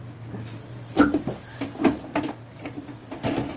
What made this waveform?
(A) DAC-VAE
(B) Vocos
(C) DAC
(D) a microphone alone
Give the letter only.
D